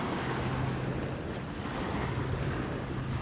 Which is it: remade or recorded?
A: recorded